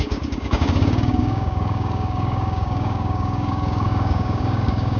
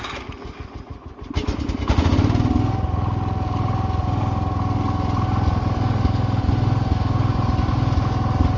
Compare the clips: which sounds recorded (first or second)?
second